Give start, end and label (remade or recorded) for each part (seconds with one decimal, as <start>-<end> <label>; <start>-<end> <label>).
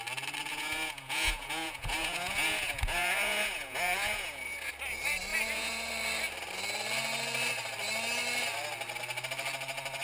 0.0-0.5 recorded; 0.5-4.7 remade; 4.7-5.3 recorded; 5.3-5.9 remade; 5.9-10.0 recorded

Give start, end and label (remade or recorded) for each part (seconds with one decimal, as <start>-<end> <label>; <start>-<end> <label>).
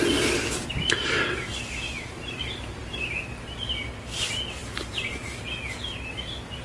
0.0-2.1 recorded; 2.1-2.8 remade; 2.8-4.6 recorded; 4.6-5.2 remade; 5.2-6.6 recorded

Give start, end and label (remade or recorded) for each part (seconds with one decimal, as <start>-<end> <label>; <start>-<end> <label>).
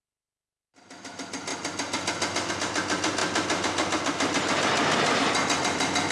0.0-6.1 recorded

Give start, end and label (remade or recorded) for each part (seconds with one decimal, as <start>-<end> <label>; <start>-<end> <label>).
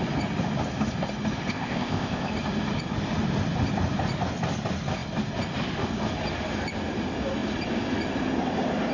0.0-1.5 recorded; 1.5-2.3 remade; 2.3-8.9 recorded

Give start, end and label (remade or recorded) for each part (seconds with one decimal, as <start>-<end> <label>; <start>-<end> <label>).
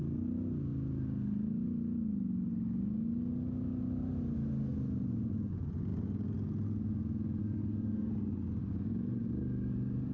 0.0-7.4 recorded; 7.4-8.1 remade; 8.1-10.1 recorded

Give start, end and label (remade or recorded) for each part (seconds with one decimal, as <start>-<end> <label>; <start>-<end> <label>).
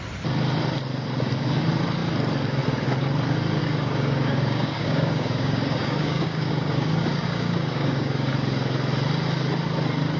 0.0-3.6 recorded; 3.6-8.3 remade; 8.3-10.2 recorded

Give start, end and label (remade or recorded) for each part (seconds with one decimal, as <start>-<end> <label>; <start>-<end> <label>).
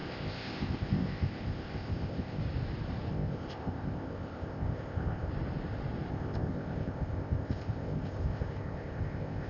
0.0-2.4 remade; 2.4-3.1 recorded; 3.1-5.3 remade; 5.3-6.1 recorded; 6.1-9.5 remade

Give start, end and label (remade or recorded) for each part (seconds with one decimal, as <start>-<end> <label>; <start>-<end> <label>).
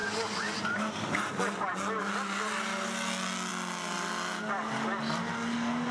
0.0-5.9 recorded